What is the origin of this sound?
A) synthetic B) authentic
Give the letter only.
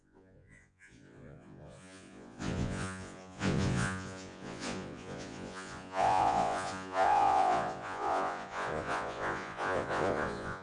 A